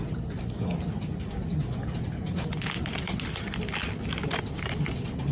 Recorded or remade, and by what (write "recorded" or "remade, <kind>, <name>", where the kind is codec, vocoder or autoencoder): recorded